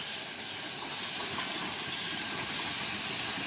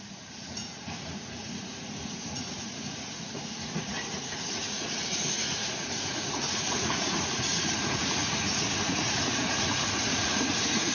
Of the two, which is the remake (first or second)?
second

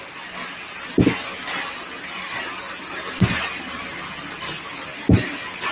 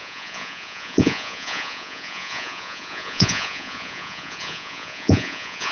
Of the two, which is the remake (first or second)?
second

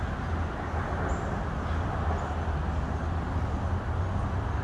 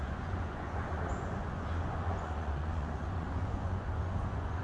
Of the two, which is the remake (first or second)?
second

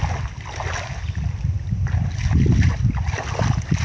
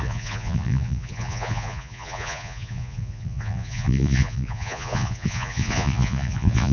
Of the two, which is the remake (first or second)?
second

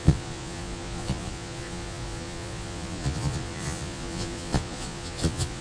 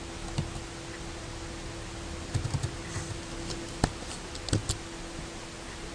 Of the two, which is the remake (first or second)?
first